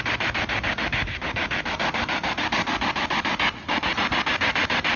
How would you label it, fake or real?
real